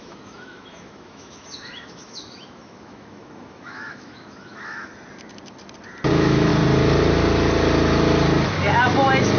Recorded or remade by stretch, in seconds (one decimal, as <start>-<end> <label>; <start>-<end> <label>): 0.0-4.9 remade; 4.9-6.1 recorded; 6.1-6.5 remade; 6.5-9.4 recorded